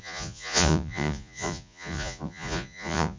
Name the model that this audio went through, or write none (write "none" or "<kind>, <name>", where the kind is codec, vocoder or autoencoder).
vocoder, Vocos